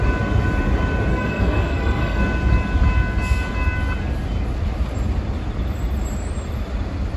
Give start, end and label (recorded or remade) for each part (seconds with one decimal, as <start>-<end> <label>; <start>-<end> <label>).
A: 0.0-1.1 recorded; 1.1-2.2 remade; 2.2-7.2 recorded